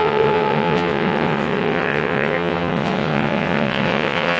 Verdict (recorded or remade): remade